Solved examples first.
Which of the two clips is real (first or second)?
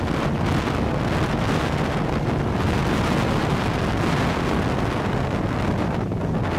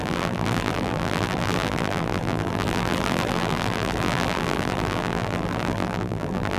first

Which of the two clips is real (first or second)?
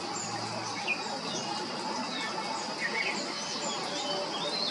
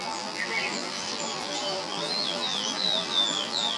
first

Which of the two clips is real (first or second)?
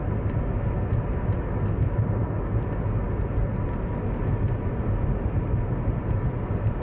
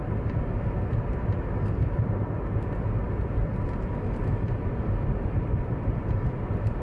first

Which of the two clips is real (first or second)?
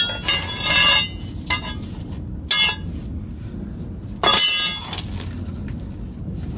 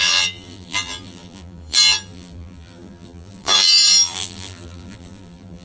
first